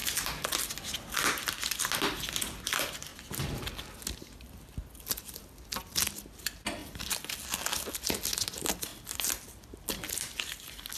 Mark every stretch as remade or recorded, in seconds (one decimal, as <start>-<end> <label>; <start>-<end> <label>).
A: 0.0-11.0 recorded